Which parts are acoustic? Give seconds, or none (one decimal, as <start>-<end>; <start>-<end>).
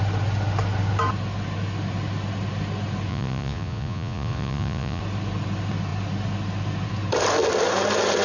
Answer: 0.0-3.1; 5.0-8.2